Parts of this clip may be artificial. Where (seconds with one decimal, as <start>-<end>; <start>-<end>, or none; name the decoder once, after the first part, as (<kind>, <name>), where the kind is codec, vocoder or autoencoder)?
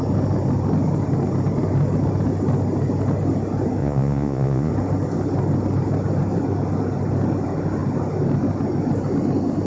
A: 3.8-4.7 (vocoder, Vocos)